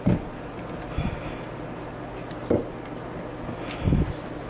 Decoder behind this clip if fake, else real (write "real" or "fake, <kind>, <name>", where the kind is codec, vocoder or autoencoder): real